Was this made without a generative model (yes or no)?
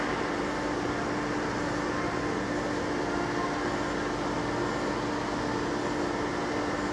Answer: yes